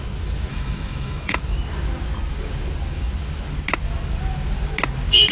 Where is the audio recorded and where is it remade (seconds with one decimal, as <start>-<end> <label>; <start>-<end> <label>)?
0.0-0.5 recorded; 0.5-1.4 remade; 1.4-5.3 recorded